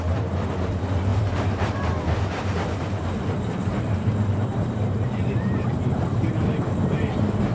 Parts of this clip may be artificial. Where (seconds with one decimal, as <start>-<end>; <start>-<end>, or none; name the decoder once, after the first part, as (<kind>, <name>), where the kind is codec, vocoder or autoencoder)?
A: 1.1-5.6 (vocoder, BigVGAN v2)